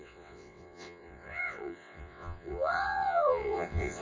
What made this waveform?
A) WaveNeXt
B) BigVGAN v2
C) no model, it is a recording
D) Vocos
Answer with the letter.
A